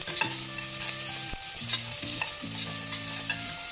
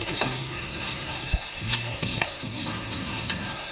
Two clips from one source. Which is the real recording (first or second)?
first